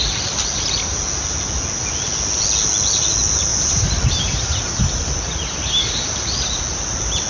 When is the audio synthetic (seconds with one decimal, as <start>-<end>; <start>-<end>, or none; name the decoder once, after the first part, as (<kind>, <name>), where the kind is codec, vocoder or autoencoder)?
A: 3.5-4.8 (vocoder, BigVGAN v2)